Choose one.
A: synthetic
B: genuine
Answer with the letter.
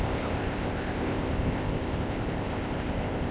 A